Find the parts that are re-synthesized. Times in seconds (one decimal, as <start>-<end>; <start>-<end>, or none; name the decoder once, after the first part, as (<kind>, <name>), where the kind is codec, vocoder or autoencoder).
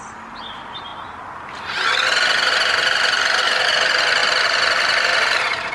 none